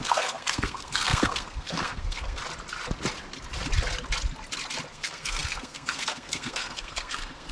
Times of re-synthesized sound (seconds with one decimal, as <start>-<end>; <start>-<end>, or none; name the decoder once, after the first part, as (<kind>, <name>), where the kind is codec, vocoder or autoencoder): 0.0-2.4 (codec, SNAC); 4.9-7.5

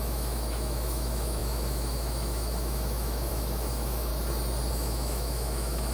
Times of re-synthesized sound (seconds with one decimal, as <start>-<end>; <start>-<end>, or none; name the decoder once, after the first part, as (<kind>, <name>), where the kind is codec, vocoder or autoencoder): 0.0-4.1 (autoencoder, DAC-VAE); 4.7-5.9